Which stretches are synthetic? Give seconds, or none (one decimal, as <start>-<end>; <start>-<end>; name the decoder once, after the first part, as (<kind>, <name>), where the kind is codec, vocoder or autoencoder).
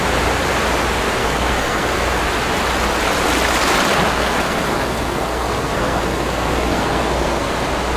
1.2-2.2 (codec, SNAC); 4.1-7.5